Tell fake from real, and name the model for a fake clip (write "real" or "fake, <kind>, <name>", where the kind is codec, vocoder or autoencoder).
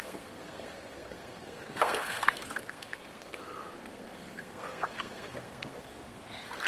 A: fake, codec, SNAC